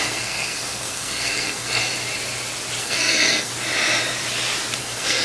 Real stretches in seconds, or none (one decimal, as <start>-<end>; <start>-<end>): 1.8-2.8; 3.5-4.8